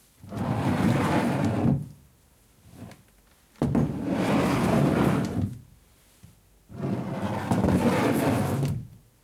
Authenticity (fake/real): real